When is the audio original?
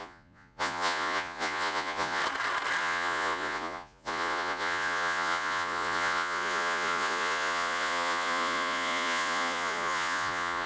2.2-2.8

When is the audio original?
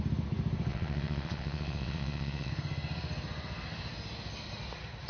0.0-0.7; 2.5-5.1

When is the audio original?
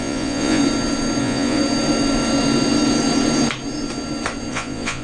0.6-1.2; 1.6-4.5